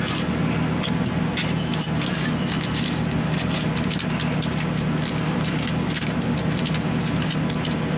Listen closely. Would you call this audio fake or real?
real